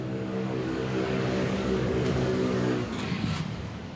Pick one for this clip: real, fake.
fake